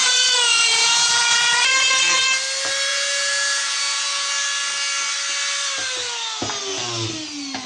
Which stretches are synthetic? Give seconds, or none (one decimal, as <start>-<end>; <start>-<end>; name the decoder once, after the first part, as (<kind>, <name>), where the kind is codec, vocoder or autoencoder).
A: 0.0-1.7 (vocoder, Vocos); 2.9-4.3